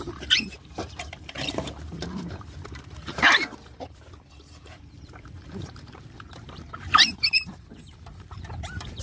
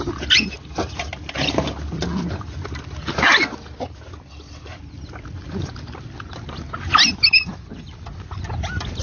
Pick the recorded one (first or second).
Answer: second